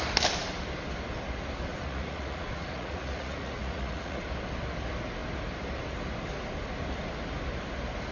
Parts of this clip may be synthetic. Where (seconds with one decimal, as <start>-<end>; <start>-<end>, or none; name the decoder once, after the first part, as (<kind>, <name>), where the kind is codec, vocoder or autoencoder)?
1.7-4.2 (vocoder, Vocos)